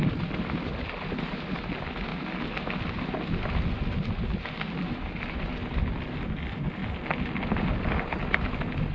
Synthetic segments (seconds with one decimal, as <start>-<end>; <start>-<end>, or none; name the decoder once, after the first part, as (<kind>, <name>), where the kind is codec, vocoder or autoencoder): none